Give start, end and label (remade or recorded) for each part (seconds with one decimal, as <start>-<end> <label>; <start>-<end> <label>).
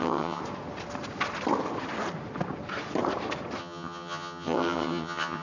0.0-0.4 remade; 0.4-3.6 recorded; 3.6-5.4 remade